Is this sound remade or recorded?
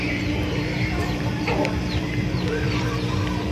remade